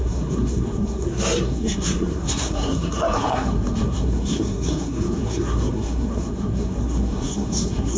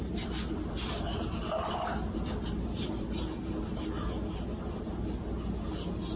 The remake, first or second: first